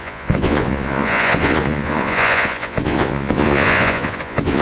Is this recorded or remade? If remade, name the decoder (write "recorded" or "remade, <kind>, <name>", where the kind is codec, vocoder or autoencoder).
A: remade, vocoder, Vocos